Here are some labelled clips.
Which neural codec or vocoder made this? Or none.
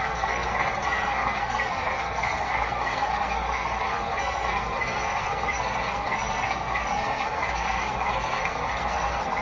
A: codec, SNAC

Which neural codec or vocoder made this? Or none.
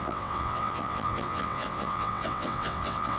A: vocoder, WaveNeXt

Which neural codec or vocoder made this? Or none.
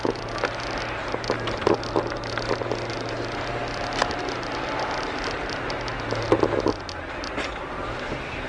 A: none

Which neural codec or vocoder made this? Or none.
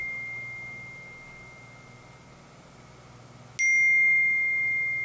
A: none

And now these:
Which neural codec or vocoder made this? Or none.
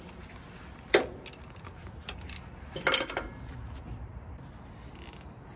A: none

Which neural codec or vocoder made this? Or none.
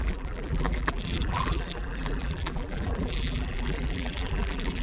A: vocoder, BigVGAN v2